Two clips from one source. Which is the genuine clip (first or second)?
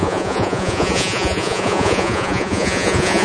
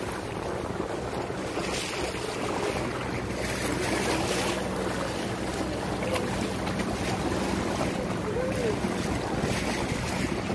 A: second